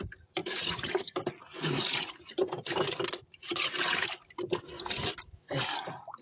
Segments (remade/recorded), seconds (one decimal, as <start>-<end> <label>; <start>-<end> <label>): 0.0-0.4 recorded; 0.4-1.1 remade; 1.1-1.5 recorded; 1.5-2.3 remade; 2.3-3.3 recorded; 3.3-4.1 remade; 4.1-6.2 recorded